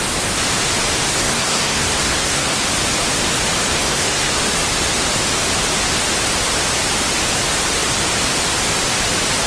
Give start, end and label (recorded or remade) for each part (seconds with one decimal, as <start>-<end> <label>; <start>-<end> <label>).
0.0-1.1 recorded; 1.1-2.6 remade; 2.6-3.7 recorded; 3.7-4.3 remade; 4.3-9.5 recorded